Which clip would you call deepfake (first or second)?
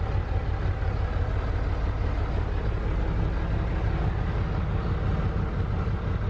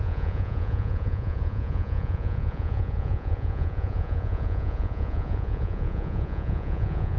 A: second